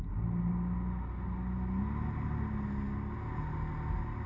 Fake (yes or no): no